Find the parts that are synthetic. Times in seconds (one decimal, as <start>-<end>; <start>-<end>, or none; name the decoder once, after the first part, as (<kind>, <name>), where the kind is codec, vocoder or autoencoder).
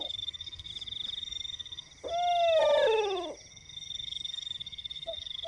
0.0-0.7 (codec, SNAC); 1.2-1.9; 3.5-5.5